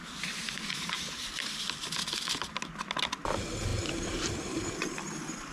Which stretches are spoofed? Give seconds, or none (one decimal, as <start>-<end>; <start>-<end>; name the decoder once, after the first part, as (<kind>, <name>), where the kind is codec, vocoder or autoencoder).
0.0-0.7 (vocoder, BigVGAN v2); 3.7-4.7